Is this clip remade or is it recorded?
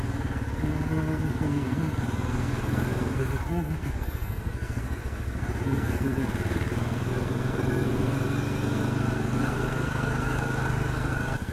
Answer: remade